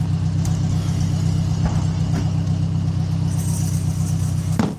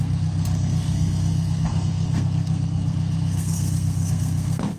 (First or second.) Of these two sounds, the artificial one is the second